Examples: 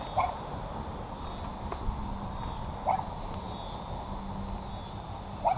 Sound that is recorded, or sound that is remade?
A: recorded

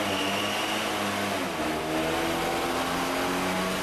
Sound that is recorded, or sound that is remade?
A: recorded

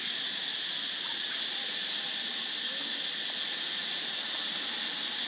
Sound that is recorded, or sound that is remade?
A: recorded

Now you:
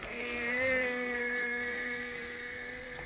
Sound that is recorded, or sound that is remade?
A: remade